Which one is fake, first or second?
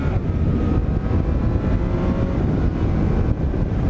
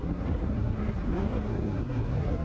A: second